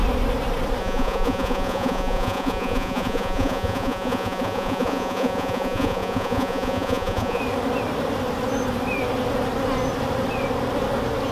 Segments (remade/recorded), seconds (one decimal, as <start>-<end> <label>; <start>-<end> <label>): 0.0-0.8 recorded; 0.8-7.4 remade; 7.4-11.3 recorded